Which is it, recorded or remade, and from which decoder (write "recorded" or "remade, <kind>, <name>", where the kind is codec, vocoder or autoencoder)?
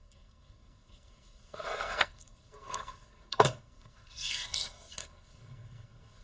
remade, codec, SNAC